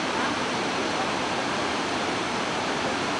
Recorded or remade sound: remade